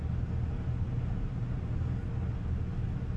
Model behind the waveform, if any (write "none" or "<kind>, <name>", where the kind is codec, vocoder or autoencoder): none